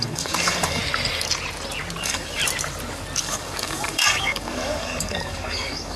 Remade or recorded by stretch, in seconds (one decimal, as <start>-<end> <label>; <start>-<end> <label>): 0.0-0.8 remade; 0.8-2.0 recorded; 2.0-2.4 remade; 2.4-3.2 recorded; 3.2-6.0 remade